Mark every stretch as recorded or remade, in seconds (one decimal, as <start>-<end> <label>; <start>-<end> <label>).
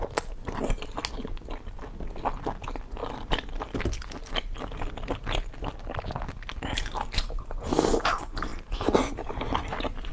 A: 0.0-10.1 recorded